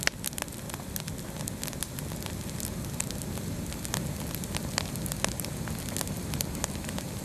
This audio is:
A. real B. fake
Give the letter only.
A